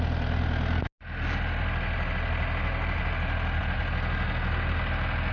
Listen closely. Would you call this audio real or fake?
real